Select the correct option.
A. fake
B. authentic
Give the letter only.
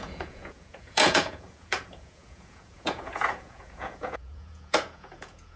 A